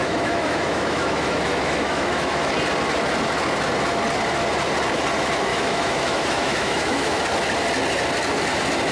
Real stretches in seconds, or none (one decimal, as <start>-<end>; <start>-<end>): 2.5-5.5; 7.2-8.9